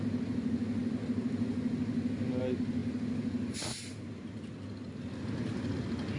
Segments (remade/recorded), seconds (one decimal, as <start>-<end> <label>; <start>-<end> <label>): 0.0-6.2 recorded